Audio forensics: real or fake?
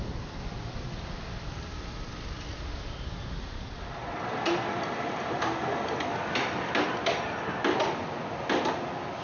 real